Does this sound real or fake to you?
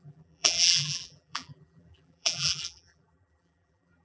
fake